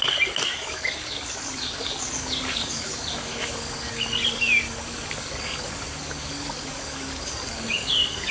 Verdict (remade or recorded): remade